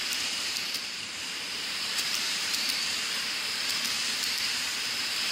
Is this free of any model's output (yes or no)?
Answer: no